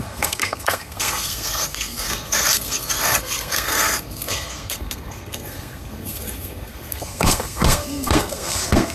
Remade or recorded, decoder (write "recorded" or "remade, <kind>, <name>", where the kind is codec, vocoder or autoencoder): remade, codec, SNAC